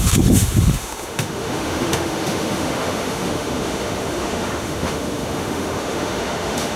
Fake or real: fake